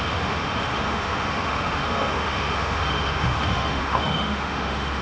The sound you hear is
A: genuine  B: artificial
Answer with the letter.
B